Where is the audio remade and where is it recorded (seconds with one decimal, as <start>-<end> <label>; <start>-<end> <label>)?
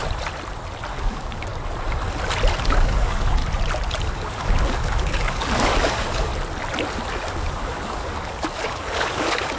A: 0.0-0.9 recorded; 0.9-1.5 remade; 1.5-2.6 recorded; 2.6-3.4 remade; 3.4-4.0 recorded; 4.0-6.3 remade; 6.3-7.1 recorded; 7.1-9.6 remade